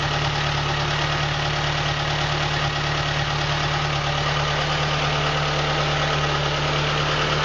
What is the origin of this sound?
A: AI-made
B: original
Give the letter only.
B